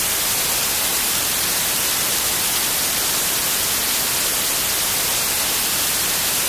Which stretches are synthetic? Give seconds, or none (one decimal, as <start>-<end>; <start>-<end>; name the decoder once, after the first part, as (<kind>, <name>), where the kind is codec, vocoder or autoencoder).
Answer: 0.9-2.3 (vocoder, BigVGAN v2)